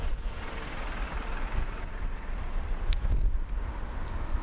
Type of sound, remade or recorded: recorded